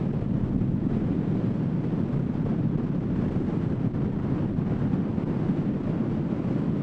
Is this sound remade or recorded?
recorded